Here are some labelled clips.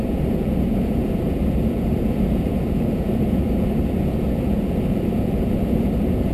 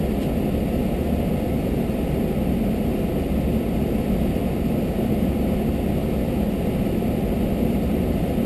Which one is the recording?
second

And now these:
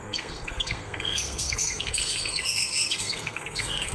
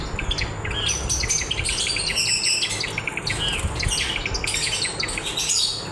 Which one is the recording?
second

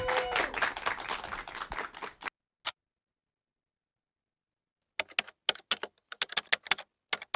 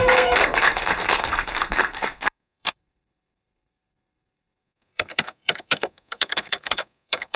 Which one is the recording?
first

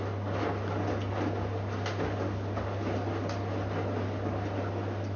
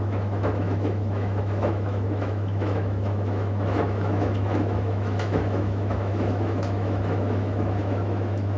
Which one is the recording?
first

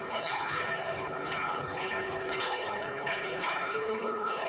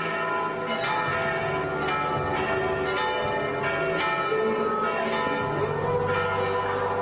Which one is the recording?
second